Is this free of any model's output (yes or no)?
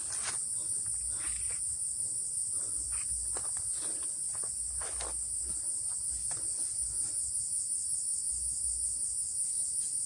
yes